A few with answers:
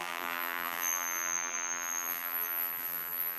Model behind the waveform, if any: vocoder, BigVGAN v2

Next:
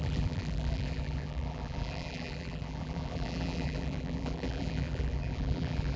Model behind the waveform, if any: vocoder, BigVGAN v2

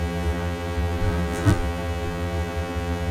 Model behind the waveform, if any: vocoder, BigVGAN v2